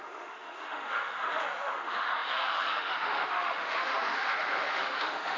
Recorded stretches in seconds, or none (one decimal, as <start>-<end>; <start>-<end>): none